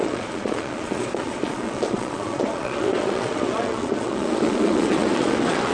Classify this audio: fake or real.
fake